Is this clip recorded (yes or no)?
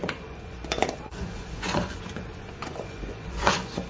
no